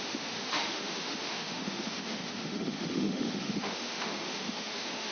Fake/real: fake